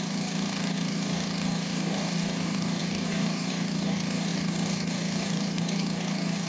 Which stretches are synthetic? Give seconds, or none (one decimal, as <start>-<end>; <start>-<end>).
0.0-6.5